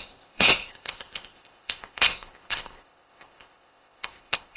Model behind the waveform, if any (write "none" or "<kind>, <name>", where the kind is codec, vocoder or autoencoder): codec, ZipCodec